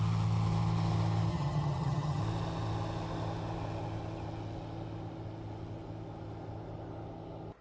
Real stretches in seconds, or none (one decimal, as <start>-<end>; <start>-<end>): 0.0-1.3; 2.2-7.6